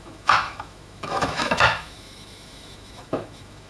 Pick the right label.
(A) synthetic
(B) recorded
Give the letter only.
A